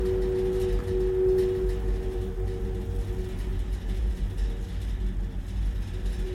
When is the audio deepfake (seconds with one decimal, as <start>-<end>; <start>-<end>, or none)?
3.5-4.1